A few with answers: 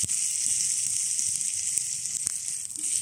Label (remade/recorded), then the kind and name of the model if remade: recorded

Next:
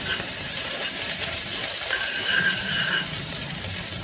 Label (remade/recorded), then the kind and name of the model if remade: remade, vocoder, BigVGAN v2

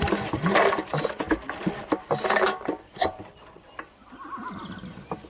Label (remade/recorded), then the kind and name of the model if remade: recorded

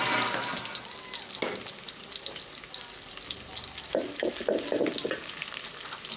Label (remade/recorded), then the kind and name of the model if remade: recorded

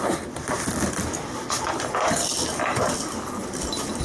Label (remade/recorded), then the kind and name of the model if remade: remade, vocoder, BigVGAN v2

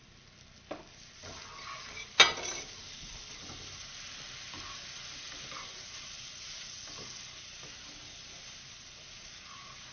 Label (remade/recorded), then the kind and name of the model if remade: recorded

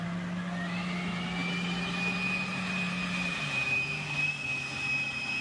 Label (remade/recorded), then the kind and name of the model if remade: recorded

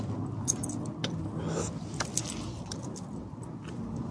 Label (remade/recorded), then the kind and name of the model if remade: recorded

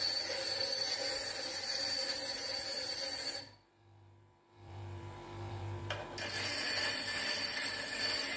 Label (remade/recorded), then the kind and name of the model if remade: remade, vocoder, BigVGAN v2